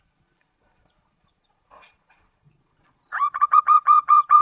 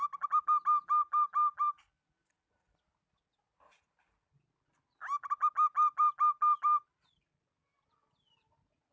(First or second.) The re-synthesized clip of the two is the first